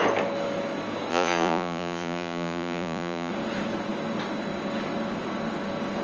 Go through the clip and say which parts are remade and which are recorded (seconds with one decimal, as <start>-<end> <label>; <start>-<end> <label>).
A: 0.0-1.1 recorded; 1.1-3.3 remade; 3.3-6.0 recorded